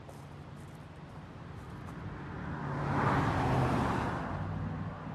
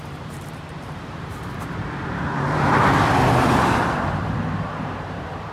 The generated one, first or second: second